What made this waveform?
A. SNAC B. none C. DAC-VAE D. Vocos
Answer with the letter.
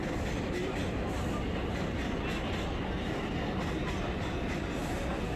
B